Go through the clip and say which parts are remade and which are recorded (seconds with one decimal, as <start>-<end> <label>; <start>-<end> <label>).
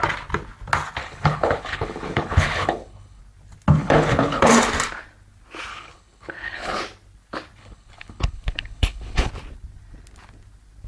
0.0-1.0 recorded; 1.0-3.2 remade; 3.2-3.8 recorded; 3.8-4.5 remade; 4.5-5.7 recorded; 5.7-6.8 remade; 6.8-7.6 recorded; 7.6-9.3 remade; 9.3-10.9 recorded